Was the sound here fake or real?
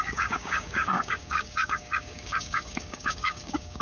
fake